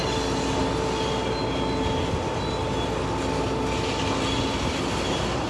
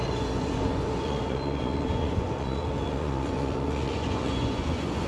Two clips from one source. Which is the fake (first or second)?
second